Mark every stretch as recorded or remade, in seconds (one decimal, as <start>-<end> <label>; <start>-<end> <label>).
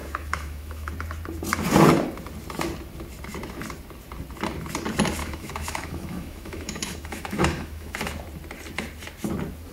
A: 0.0-0.9 remade; 0.9-5.2 recorded; 5.2-8.0 remade; 8.0-9.7 recorded